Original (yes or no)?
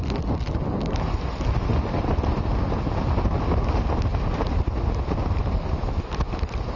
yes